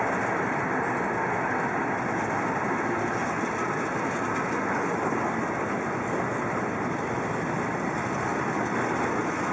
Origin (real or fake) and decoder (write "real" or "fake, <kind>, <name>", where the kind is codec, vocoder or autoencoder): real